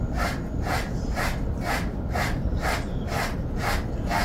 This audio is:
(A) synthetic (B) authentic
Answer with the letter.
B